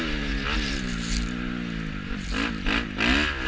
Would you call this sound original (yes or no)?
yes